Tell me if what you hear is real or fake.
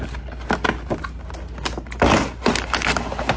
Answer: real